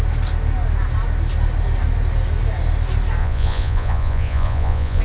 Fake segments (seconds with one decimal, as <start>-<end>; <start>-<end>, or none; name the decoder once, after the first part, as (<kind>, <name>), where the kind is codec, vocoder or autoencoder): 3.2-5.0 (vocoder, Vocos)